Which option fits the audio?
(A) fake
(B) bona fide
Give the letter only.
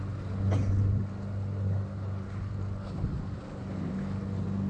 B